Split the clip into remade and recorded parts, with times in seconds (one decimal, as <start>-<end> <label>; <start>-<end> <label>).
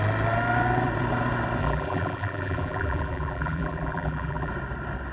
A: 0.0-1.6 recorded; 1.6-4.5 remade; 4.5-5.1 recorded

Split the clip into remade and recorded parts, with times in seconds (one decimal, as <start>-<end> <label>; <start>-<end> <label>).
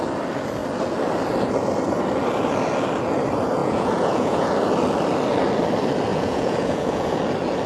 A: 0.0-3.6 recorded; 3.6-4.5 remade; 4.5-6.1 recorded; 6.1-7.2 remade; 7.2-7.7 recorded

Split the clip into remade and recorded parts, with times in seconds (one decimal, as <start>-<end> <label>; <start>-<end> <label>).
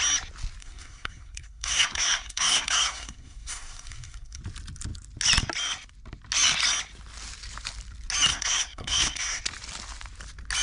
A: 0.0-0.6 recorded; 0.6-4.4 remade; 4.4-8.3 recorded; 8.3-9.4 remade; 9.4-10.6 recorded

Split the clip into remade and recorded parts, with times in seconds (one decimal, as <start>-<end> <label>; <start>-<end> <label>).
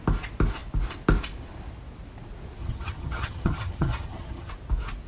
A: 0.0-2.6 recorded; 2.6-4.5 remade; 4.5-5.1 recorded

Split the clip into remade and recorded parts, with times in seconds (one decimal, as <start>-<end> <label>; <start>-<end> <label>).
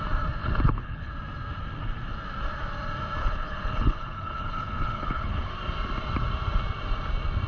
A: 0.0-0.4 recorded; 0.4-1.1 remade; 1.1-3.2 recorded; 3.2-5.5 remade; 5.5-7.5 recorded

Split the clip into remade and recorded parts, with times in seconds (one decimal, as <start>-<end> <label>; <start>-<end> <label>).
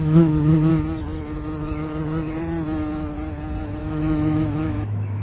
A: 0.0-0.7 remade; 0.7-3.8 recorded; 3.8-5.2 remade